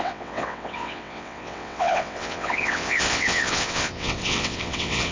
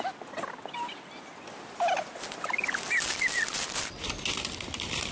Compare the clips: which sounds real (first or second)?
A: second